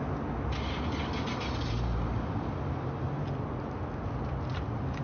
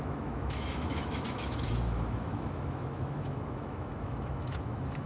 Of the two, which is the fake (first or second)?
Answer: second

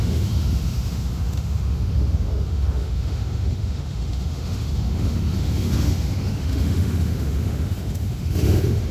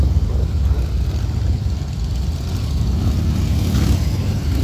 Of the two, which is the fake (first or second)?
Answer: first